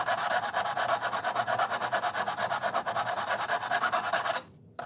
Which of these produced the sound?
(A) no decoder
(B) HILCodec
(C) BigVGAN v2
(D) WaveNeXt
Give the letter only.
A